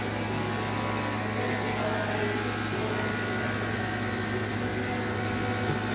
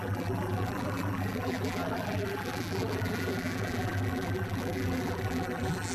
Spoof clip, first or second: second